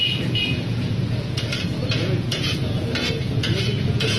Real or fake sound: fake